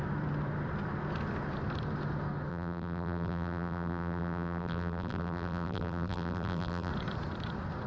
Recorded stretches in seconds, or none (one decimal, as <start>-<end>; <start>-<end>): 0.0-2.5; 6.9-7.9